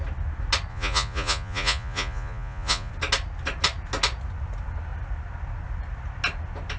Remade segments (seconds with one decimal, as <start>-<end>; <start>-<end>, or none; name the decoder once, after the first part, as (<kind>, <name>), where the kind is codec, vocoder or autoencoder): 0.7-2.9 (vocoder, Vocos)